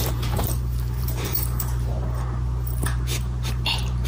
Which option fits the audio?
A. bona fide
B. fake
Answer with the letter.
B